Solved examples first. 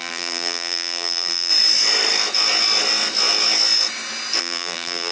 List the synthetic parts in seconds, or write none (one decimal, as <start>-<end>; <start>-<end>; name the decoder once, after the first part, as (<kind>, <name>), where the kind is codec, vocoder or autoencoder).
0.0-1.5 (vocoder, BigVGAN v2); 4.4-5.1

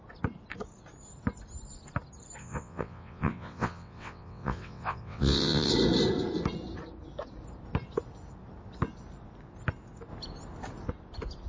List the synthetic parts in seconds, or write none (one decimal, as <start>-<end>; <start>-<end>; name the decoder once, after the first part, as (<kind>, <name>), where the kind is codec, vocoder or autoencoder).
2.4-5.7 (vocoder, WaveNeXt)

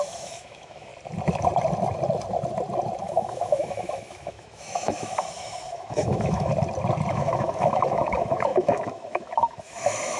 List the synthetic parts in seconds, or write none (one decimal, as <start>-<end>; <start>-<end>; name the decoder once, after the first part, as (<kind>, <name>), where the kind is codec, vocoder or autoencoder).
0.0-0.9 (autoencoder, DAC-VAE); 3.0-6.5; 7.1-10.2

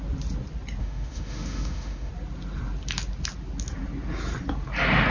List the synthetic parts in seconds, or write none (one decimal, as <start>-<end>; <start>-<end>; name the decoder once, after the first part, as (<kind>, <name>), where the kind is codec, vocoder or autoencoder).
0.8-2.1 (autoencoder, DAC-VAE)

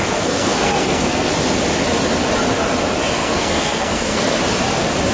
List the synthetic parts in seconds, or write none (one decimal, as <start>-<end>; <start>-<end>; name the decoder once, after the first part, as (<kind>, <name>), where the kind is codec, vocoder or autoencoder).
0.0-1.3 (codec, SNAC); 3.2-4.4

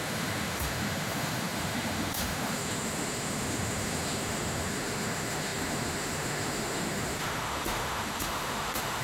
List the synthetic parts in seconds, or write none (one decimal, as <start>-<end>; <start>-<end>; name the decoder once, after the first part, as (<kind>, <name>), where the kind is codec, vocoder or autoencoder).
0.0-9.0 (autoencoder, DAC-VAE)

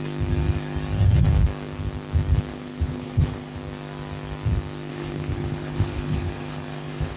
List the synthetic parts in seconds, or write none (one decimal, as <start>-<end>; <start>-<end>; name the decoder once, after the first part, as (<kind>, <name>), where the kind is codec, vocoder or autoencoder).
2.5-3.6 (codec, HILCodec); 4.9-7.2

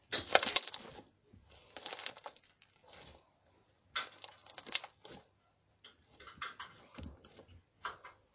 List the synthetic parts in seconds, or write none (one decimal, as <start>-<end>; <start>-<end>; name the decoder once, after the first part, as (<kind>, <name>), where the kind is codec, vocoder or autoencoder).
none